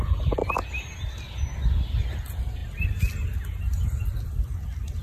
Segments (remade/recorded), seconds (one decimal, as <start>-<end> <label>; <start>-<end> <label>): 0.0-5.0 recorded